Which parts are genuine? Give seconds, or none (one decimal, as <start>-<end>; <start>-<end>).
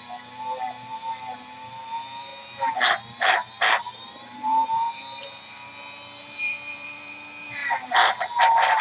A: 2.3-3.8